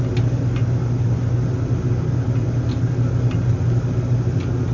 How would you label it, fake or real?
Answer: real